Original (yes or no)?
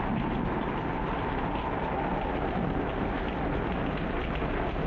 yes